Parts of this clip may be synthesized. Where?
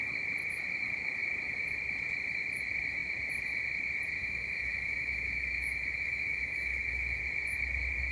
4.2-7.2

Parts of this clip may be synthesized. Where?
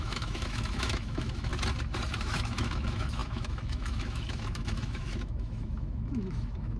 0.0-1.5; 2.2-6.8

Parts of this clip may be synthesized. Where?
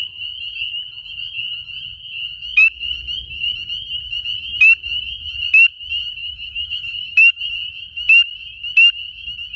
6.2-7.4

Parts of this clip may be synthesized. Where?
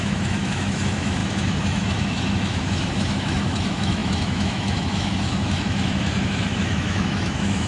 0.0-7.7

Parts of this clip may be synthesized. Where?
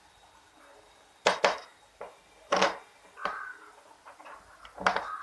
none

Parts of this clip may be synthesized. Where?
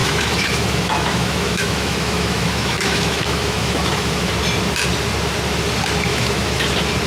0.0-4.3; 6.1-6.6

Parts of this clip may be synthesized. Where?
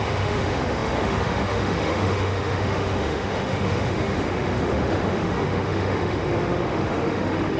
0.0-7.6